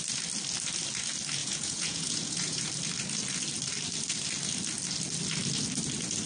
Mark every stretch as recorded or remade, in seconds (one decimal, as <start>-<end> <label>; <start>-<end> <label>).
0.0-1.4 recorded; 1.4-2.6 remade; 2.6-6.3 recorded